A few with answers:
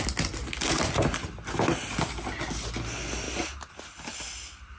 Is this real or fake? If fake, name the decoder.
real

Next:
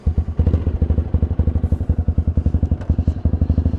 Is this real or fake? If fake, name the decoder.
real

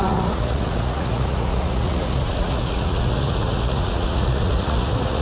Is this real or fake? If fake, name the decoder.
fake, vocoder, Vocos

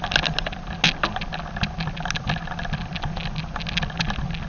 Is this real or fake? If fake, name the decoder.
real